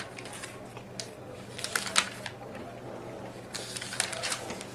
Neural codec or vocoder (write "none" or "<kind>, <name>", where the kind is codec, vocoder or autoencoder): none